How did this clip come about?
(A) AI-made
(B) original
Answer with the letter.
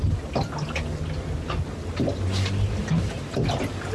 B